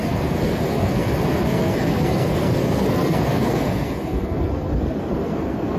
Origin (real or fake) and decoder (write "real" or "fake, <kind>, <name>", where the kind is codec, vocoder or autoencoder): fake, codec, SNAC